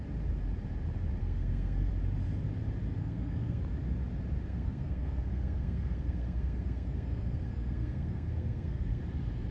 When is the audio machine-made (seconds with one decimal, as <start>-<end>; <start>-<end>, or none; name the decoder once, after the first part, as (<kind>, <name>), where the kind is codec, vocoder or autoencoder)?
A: 1.2-1.9 (codec, SNAC); 3.0-3.6; 4.5-9.0